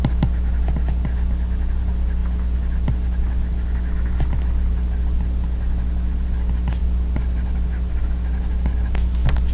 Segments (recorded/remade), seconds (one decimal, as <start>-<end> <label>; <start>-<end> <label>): 0.0-9.5 recorded